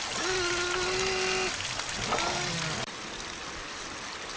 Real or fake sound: real